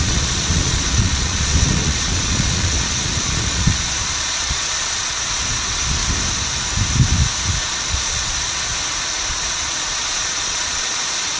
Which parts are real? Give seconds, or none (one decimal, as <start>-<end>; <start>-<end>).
6.0-7.6; 8.7-9.3

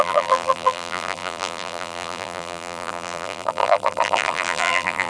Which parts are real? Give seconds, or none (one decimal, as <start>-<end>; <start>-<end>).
none

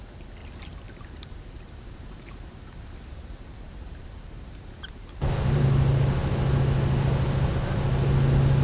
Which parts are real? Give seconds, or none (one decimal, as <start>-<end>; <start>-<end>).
0.0-0.4; 5.6-8.6

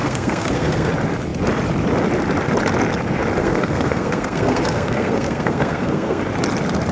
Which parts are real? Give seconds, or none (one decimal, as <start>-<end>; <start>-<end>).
0.9-3.4; 6.2-6.9

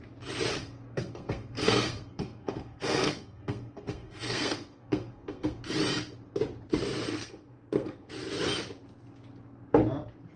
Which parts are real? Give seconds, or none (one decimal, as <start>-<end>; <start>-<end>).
0.0-0.6; 5.6-7.1; 8.1-10.4

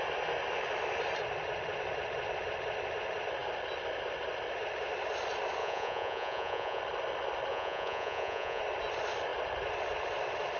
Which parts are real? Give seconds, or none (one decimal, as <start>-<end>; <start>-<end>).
0.0-5.6; 6.8-7.5; 8.6-10.6

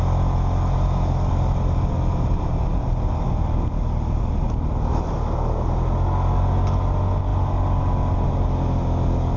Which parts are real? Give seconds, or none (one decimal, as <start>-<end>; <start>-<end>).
0.0-9.4